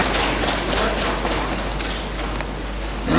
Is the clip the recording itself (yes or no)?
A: yes